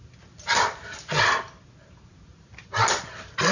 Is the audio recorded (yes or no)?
yes